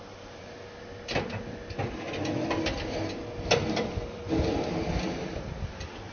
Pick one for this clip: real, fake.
real